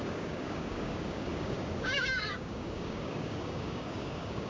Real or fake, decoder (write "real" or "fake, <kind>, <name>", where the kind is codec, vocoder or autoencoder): fake, codec, DAC